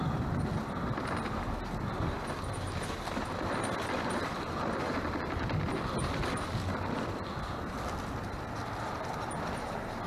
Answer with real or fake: real